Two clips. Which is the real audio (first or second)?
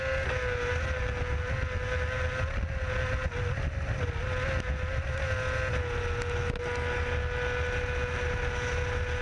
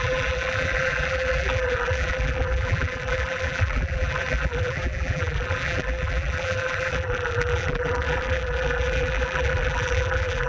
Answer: first